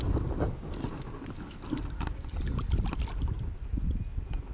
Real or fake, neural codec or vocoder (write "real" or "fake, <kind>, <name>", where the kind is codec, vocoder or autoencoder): real